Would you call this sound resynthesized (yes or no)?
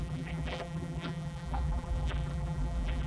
yes